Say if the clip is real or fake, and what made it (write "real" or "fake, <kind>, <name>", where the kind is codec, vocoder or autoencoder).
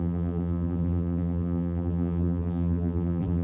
fake, vocoder, BigVGAN v2